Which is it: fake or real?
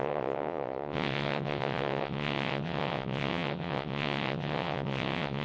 fake